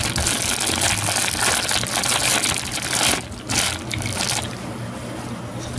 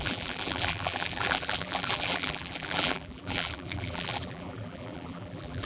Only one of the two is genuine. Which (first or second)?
first